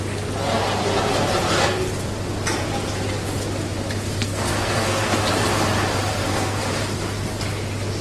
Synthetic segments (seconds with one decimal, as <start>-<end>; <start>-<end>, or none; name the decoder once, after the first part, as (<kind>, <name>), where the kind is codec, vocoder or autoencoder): 4.2-5.2 (codec, SNAC); 6.1-6.7